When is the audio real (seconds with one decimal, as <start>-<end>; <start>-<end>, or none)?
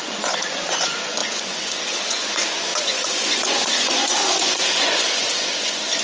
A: none